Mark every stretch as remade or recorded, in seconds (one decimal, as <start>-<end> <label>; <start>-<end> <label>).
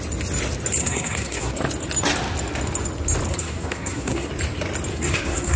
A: 0.0-0.8 recorded; 0.8-1.5 remade; 1.5-3.3 recorded; 3.3-4.3 remade; 4.3-4.9 recorded; 4.9-5.6 remade